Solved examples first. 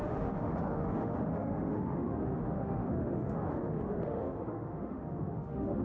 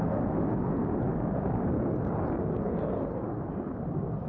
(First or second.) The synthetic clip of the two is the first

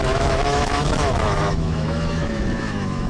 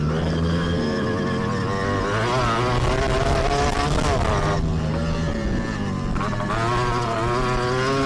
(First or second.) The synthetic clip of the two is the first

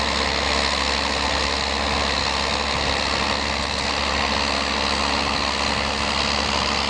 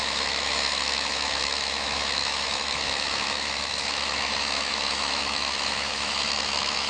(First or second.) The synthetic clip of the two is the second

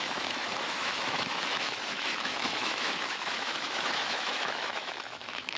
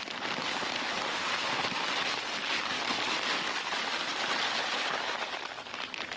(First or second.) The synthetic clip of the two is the first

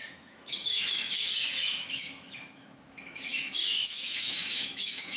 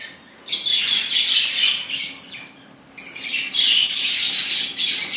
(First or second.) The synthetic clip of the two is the first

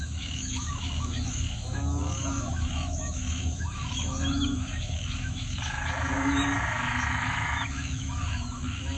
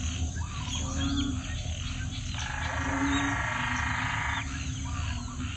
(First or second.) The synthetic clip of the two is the first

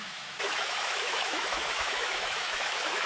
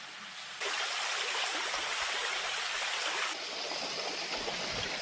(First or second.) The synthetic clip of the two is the first